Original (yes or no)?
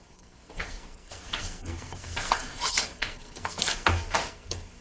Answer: no